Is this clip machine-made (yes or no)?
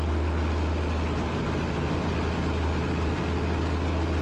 no